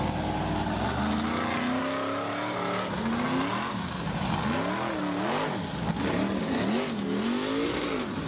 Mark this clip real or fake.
real